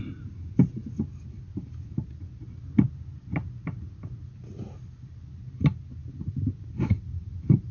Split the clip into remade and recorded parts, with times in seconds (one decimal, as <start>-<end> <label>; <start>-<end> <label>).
0.0-7.7 recorded

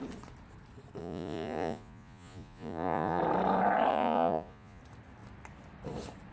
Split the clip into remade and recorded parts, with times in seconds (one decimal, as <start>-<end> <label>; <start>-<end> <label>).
0.0-1.0 recorded; 1.0-3.2 remade; 3.2-3.9 recorded; 3.9-4.8 remade; 4.8-6.3 recorded

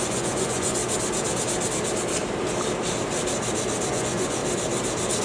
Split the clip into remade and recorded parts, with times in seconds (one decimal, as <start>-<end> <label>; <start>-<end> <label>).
0.0-0.8 remade; 0.8-3.9 recorded; 3.9-4.4 remade; 4.4-5.2 recorded

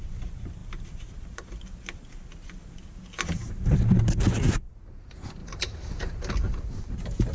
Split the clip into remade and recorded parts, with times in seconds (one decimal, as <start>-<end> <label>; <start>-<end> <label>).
0.0-7.3 recorded

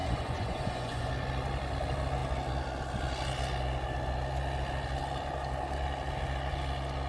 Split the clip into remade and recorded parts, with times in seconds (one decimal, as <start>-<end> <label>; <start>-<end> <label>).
0.0-1.1 remade; 1.1-7.1 recorded